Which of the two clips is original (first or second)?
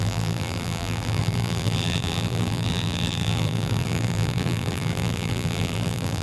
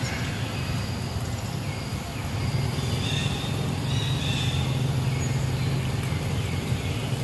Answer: second